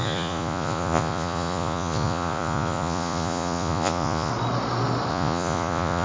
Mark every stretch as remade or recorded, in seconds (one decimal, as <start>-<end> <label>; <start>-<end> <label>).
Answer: 0.0-4.3 remade; 4.3-5.1 recorded; 5.1-6.0 remade

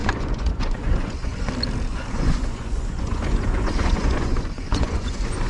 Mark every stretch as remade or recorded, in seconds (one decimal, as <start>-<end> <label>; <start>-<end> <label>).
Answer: 0.0-1.5 remade; 1.5-1.9 recorded; 1.9-5.5 remade